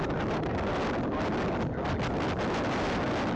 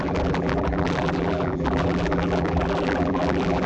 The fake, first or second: second